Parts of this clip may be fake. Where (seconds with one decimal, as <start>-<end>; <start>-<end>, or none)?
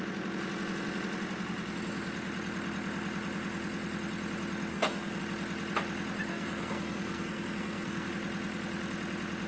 4.7-5.2; 6.3-8.1